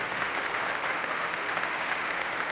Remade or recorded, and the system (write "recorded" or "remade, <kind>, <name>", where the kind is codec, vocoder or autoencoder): remade, autoencoder, DAC-VAE